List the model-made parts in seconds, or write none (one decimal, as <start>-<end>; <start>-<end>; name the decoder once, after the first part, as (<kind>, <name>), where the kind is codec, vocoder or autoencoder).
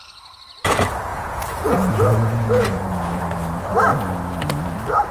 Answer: 1.1-3.2 (vocoder, Vocos)